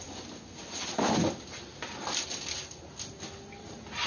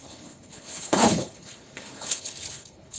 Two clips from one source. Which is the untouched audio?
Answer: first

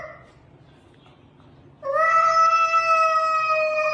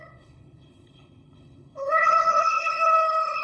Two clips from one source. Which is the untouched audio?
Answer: first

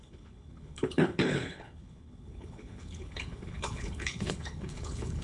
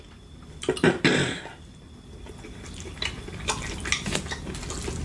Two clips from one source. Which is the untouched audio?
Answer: second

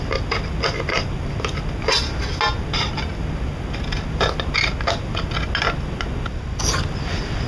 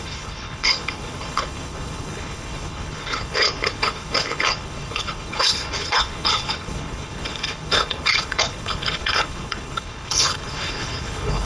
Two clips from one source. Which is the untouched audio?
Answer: first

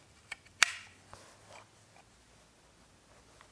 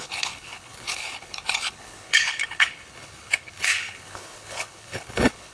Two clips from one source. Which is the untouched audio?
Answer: first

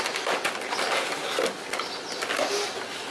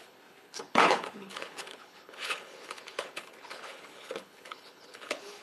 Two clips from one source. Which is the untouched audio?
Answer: first